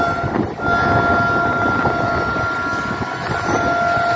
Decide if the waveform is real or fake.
real